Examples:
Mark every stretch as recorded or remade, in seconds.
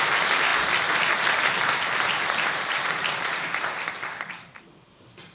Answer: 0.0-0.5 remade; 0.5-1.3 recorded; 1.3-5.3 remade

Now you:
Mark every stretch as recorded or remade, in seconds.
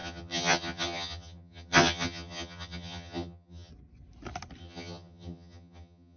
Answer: 0.0-3.7 remade; 3.7-4.6 recorded; 4.6-6.2 remade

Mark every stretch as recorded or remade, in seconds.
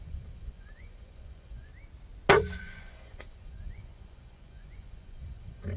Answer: 0.0-1.7 remade; 1.7-2.6 recorded; 2.6-5.8 remade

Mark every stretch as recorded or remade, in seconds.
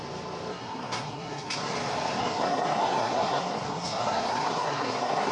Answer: 0.0-0.5 recorded; 0.5-1.7 remade; 1.7-2.2 recorded; 2.2-5.3 remade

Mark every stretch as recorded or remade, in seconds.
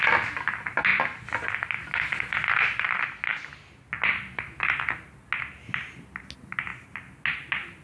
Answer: 0.0-7.8 recorded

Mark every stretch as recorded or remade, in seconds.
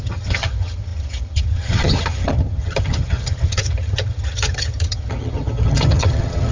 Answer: 0.0-6.5 remade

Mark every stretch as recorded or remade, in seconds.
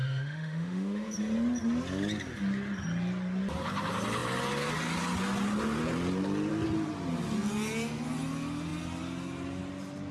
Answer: 0.0-1.1 remade; 1.1-10.1 recorded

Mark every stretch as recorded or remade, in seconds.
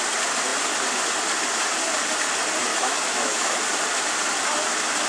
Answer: 0.0-2.7 recorded; 2.7-3.6 remade; 3.6-5.1 recorded